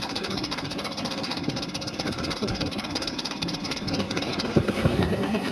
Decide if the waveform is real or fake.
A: fake